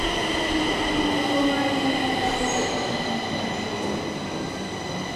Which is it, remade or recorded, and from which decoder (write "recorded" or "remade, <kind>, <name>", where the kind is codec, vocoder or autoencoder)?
recorded